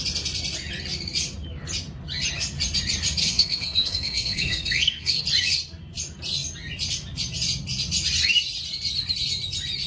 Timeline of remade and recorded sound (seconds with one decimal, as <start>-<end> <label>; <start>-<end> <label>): 0.0-3.2 recorded; 3.2-5.2 remade; 5.2-9.9 recorded